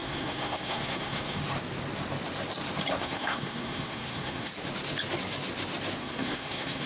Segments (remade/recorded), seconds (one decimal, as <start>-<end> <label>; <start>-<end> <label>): 0.0-1.4 remade; 1.4-3.0 recorded; 3.0-4.5 remade; 4.5-6.0 recorded; 6.0-6.9 remade